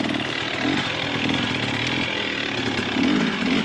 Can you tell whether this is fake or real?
real